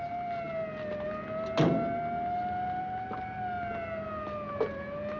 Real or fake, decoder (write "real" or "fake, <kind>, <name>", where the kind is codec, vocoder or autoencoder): real